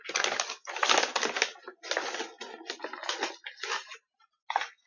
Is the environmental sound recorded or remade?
recorded